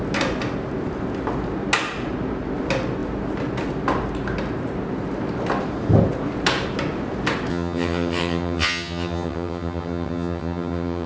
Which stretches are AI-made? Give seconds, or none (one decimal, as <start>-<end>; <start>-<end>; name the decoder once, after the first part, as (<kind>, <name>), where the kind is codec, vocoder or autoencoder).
7.5-11.1 (vocoder, HiFi-GAN)